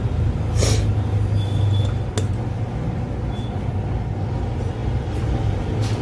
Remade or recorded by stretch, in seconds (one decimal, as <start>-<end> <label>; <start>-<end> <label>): 0.0-6.0 recorded